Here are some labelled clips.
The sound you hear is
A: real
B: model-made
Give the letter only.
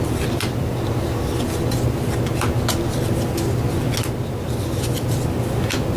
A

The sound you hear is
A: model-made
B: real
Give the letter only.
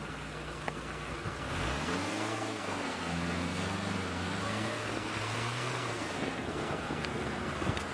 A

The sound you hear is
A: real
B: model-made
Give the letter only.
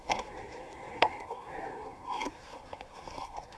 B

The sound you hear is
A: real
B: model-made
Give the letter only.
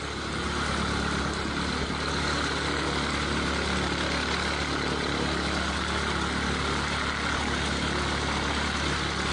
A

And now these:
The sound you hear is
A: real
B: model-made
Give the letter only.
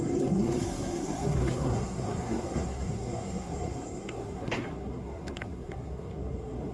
B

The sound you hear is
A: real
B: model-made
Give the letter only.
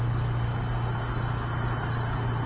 A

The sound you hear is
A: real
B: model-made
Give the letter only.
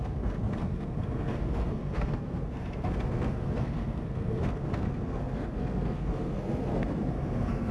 B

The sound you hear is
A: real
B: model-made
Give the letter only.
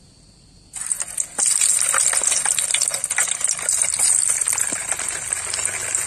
A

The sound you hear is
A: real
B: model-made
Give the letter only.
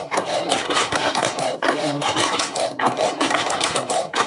B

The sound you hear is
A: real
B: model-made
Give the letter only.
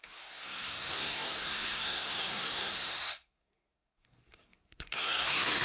B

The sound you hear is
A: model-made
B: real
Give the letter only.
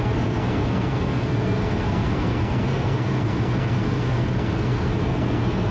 A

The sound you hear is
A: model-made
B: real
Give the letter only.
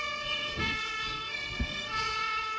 A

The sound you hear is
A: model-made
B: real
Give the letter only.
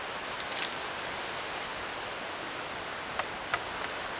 B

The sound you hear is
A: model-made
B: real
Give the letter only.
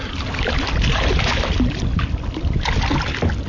B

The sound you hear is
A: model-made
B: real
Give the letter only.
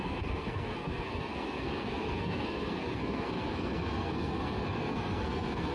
A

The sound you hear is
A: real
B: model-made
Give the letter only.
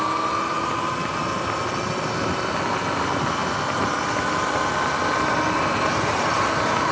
A